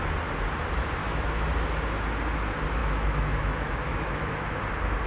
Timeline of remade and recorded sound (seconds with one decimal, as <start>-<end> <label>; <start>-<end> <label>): 0.0-1.0 recorded; 1.0-1.5 remade; 1.5-2.8 recorded; 2.8-4.6 remade; 4.6-5.1 recorded